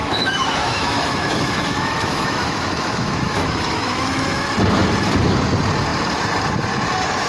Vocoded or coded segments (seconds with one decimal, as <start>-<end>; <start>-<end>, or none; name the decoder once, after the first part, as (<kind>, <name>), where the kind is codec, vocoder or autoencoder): 0.0-4.4 (autoencoder, DAC-VAE)